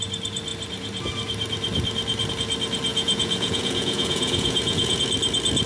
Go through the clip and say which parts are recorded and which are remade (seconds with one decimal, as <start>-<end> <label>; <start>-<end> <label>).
0.0-2.9 recorded; 2.9-5.0 remade; 5.0-5.7 recorded